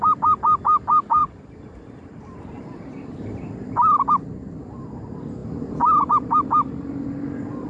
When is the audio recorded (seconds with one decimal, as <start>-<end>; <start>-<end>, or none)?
0.0-1.2; 3.2-7.7